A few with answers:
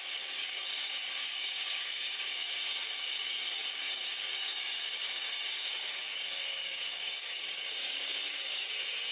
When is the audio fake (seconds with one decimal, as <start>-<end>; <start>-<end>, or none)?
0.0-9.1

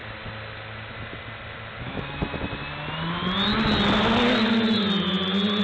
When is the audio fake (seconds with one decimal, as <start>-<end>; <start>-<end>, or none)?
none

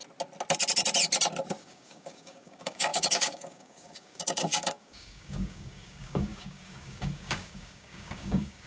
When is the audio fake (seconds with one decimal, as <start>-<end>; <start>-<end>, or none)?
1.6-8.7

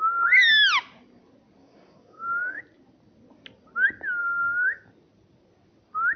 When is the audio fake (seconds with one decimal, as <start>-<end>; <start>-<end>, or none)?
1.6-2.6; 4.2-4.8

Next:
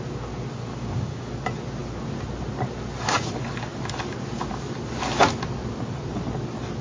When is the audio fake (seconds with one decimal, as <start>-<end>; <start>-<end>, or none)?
0.7-1.3